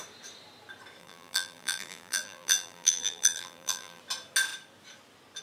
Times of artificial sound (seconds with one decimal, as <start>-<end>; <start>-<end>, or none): 1.0-4.0